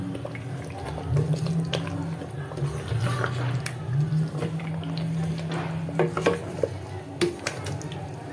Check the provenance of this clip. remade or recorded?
recorded